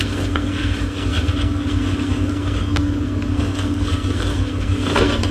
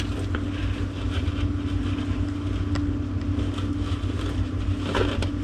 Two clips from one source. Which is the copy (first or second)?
first